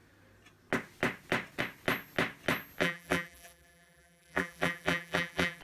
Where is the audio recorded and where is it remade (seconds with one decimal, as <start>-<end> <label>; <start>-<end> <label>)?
0.0-2.8 recorded; 2.8-5.6 remade